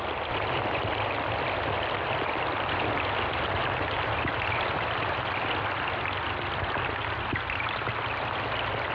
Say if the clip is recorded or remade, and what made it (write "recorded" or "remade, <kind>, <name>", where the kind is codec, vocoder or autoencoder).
recorded